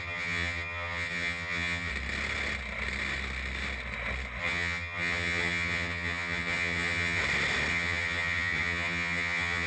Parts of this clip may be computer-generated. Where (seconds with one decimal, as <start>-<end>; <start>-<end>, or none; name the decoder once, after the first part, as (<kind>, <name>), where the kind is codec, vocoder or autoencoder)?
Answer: 0.0-1.9 (vocoder, HiFi-GAN); 4.4-7.2; 7.7-9.7